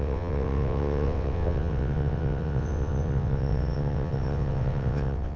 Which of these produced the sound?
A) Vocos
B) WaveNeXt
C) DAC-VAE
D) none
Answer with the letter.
B